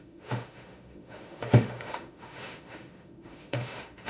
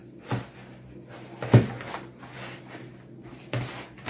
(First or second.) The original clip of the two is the second